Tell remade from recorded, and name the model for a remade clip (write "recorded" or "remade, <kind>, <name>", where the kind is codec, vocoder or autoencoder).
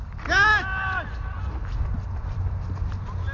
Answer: recorded